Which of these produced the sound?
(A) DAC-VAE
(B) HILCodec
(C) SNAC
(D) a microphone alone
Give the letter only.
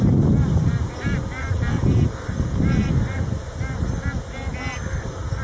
D